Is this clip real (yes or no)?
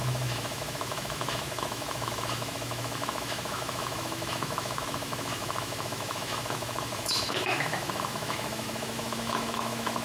no